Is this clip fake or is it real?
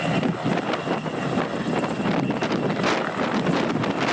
real